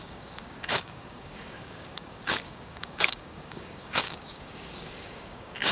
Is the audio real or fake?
fake